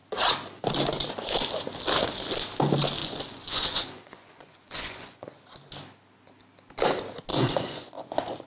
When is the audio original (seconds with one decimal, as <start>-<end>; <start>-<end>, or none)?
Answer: 0.0-3.0; 5.4-7.3